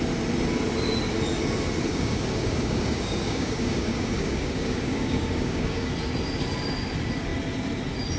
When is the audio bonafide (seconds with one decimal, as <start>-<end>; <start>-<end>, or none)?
0.0-1.9; 5.9-8.2